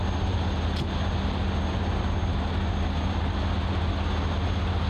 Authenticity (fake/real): real